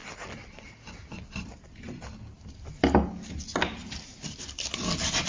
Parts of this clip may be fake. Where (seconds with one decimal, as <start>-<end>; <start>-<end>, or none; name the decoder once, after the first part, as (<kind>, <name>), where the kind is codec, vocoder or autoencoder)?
3.8-4.4 (vocoder, BigVGAN v2)